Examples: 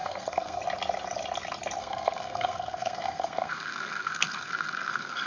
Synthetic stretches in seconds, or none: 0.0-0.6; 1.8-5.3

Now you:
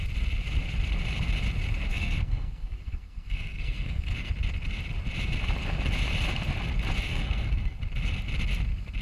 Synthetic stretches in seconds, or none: 1.9-4.3; 7.1-7.8